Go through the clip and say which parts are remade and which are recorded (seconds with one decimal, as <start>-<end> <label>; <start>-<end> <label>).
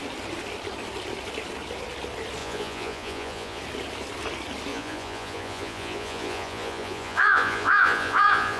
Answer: 0.0-2.4 recorded; 2.4-3.6 remade; 3.6-4.7 recorded; 4.7-8.6 remade